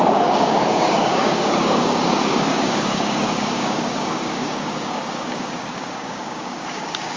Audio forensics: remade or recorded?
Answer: remade